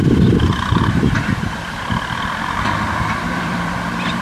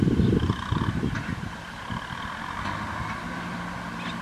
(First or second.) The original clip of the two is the second